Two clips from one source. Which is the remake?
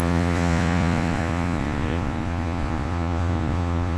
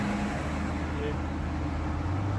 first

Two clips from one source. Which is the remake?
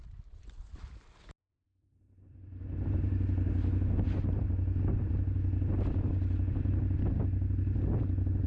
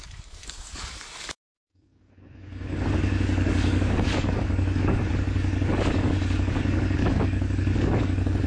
second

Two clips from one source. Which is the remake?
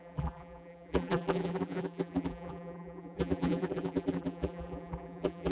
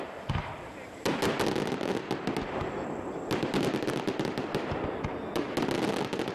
first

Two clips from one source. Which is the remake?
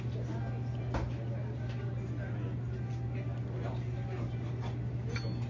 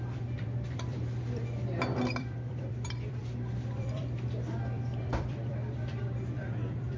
second